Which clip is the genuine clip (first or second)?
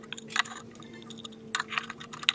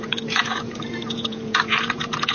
first